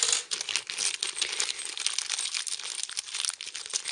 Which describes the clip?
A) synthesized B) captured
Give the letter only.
B